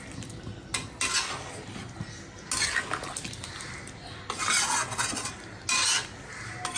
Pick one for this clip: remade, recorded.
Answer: recorded